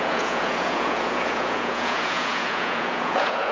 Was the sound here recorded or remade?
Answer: remade